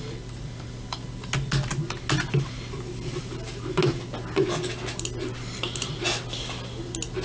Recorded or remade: recorded